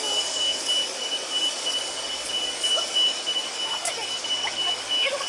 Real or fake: fake